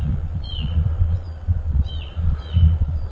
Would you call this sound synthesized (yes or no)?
yes